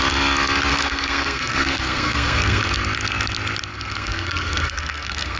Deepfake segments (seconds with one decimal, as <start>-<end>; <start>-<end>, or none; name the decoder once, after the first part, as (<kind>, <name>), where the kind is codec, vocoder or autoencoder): 0.7-2.6 (codec, SNAC); 3.7-5.4